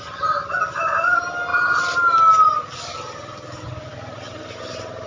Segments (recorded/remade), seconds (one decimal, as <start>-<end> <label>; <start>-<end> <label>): 0.0-5.1 recorded

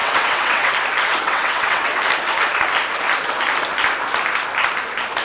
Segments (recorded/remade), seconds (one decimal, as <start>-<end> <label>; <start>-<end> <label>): 0.0-0.7 remade; 0.7-1.1 recorded; 1.1-2.0 remade; 2.0-5.2 recorded

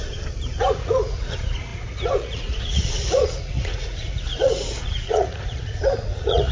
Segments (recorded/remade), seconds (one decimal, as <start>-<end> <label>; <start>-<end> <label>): 0.0-0.6 recorded; 0.6-6.5 remade

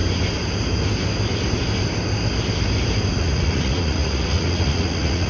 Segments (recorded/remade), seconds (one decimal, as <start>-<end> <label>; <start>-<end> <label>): 0.0-3.1 recorded; 3.1-5.3 remade

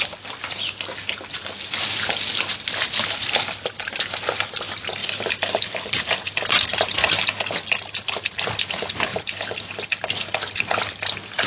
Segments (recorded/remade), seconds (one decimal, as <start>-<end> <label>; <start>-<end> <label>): 0.0-5.0 recorded; 5.0-6.3 remade; 6.3-9.1 recorded; 9.1-9.7 remade; 9.7-11.5 recorded

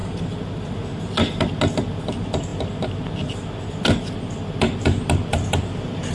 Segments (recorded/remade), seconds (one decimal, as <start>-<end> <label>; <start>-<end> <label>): 0.0-5.3 recorded; 5.3-6.1 remade

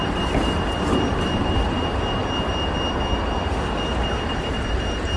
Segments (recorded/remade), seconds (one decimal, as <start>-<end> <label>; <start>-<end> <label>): 0.0-2.2 remade; 2.2-4.4 recorded; 4.4-5.2 remade

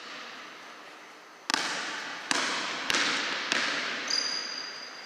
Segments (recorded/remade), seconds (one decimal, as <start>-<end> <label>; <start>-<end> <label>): 0.0-5.1 recorded